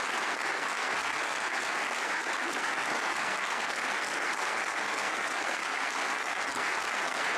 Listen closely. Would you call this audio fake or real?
fake